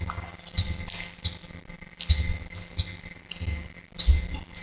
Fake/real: real